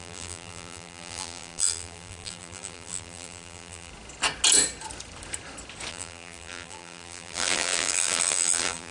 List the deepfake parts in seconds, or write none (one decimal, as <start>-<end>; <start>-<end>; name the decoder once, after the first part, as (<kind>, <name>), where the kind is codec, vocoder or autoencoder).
0.0-3.9 (vocoder, BigVGAN v2); 5.9-8.9